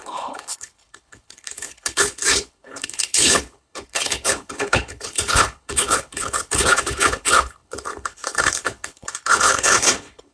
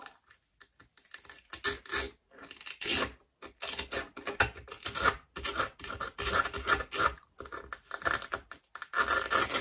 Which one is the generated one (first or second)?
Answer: first